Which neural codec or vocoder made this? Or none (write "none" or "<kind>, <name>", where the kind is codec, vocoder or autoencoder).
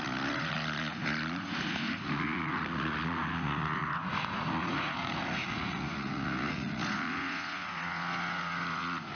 vocoder, Vocos